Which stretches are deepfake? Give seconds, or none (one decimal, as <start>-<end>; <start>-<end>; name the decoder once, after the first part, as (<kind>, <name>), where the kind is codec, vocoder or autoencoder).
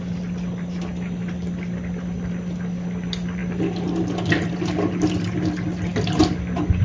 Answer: 0.0-5.9 (vocoder, BigVGAN v2)